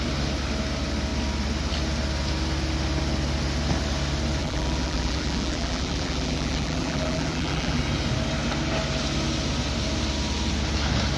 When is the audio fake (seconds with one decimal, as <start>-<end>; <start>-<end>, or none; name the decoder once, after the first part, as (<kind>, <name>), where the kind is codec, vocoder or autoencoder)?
4.4-7.8 (vocoder, BigVGAN v2)